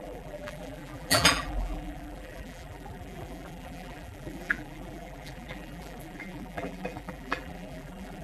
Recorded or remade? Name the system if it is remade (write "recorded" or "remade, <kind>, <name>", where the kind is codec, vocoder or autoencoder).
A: remade, vocoder, BigVGAN v2